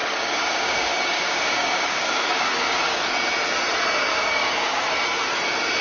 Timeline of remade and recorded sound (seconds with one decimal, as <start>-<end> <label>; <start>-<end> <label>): 0.0-3.0 remade; 3.0-4.1 recorded; 4.1-4.9 remade; 4.9-5.8 recorded